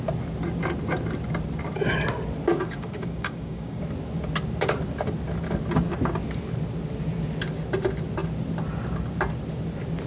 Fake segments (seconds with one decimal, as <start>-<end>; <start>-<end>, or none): 2.5-3.8